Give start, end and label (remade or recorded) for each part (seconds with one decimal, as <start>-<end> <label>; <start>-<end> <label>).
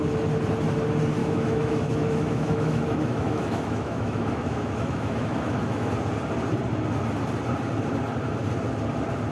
0.0-1.2 recorded; 1.2-5.9 remade; 5.9-9.3 recorded